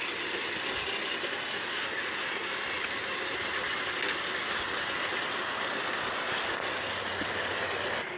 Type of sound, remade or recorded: recorded